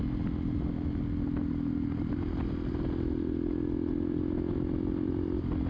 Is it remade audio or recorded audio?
recorded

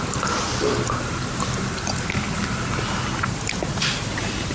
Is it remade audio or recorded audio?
recorded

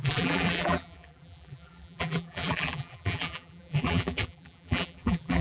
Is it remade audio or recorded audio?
remade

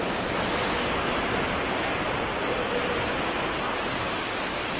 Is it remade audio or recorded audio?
recorded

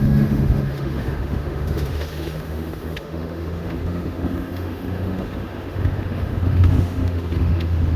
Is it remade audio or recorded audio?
remade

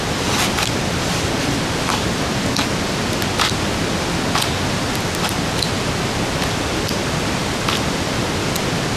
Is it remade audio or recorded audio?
recorded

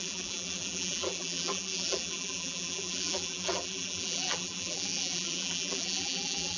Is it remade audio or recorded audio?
remade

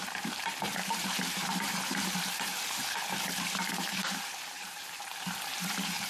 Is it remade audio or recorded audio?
remade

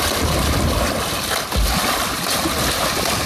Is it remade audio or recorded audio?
recorded